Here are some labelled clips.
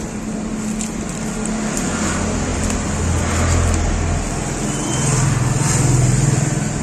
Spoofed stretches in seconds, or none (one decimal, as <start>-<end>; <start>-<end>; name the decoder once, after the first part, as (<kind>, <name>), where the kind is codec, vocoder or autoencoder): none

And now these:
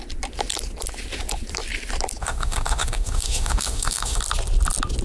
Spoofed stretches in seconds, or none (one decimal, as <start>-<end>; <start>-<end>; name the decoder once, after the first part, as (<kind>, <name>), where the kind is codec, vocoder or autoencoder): 2.2-4.2 (autoencoder, DAC-VAE)

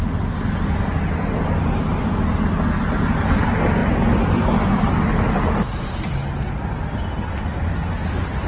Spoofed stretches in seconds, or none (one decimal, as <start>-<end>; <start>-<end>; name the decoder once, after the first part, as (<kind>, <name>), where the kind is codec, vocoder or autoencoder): none